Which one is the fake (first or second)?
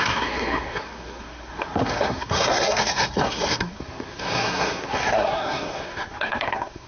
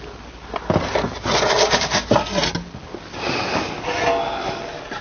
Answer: first